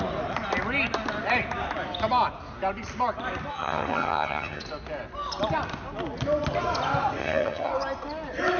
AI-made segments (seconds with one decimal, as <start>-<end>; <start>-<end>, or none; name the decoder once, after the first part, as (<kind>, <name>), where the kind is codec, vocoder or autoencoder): 3.5-4.6 (vocoder, HiFi-GAN); 7.2-7.7